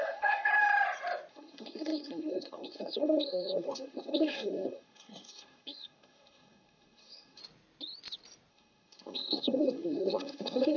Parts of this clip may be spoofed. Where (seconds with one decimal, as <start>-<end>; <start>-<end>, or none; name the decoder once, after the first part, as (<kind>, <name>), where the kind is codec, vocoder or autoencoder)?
0.0-0.5 (codec, SNAC); 1.3-7.4; 8.5-10.8